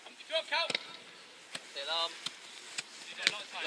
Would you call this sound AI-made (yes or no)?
no